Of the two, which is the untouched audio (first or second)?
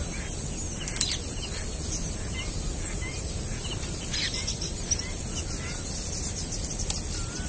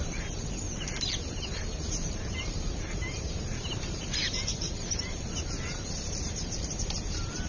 first